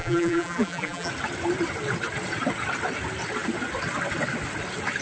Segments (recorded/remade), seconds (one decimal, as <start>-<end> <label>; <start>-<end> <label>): 0.0-1.1 remade; 1.1-5.0 recorded